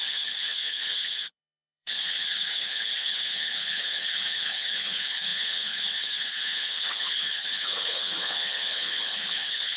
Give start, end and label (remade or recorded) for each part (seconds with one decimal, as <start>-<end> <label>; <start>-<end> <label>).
0.0-9.8 remade